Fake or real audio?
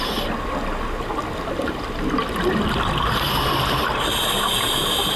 real